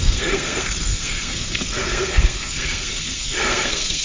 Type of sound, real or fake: fake